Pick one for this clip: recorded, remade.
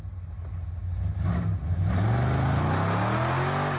recorded